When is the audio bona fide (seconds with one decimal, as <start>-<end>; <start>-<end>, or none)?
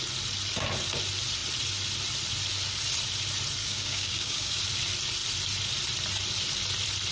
0.0-3.6; 4.6-7.1